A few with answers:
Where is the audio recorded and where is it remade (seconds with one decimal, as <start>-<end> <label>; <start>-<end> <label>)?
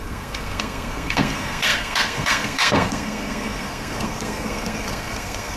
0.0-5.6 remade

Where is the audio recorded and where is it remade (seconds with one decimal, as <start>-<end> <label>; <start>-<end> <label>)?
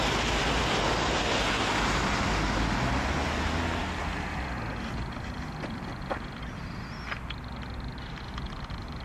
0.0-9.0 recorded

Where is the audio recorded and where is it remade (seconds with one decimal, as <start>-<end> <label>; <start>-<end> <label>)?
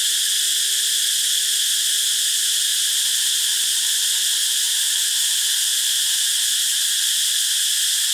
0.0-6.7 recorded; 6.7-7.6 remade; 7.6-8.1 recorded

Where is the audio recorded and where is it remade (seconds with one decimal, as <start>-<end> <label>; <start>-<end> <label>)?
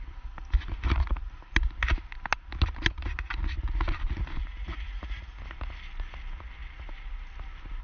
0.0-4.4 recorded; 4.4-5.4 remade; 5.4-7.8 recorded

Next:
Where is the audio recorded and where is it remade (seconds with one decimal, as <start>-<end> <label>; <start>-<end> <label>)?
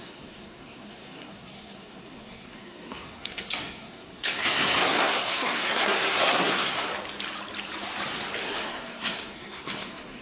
0.0-6.9 remade; 6.9-8.4 recorded; 8.4-10.2 remade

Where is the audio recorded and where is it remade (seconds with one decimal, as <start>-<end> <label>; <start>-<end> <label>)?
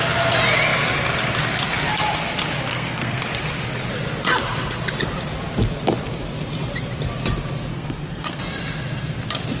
0.0-2.7 recorded; 2.7-3.2 remade; 3.2-7.7 recorded; 7.7-8.4 remade; 8.4-9.6 recorded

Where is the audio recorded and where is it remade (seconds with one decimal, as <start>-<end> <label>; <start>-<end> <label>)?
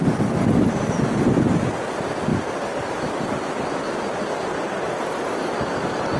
0.0-2.3 recorded; 2.3-3.0 remade; 3.0-6.2 recorded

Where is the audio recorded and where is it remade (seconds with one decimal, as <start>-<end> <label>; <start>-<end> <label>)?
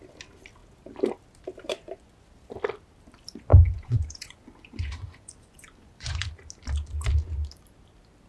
0.0-1.7 recorded; 1.7-2.3 remade; 2.3-3.5 recorded; 3.5-6.3 remade; 6.3-8.3 recorded